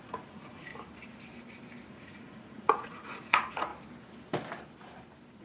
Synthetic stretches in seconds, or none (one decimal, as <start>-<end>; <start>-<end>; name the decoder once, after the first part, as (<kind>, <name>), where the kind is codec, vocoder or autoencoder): 0.0-0.7 (vocoder, Vocos); 1.9-3.7